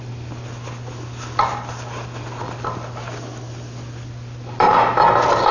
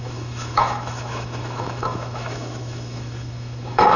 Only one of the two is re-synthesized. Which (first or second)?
second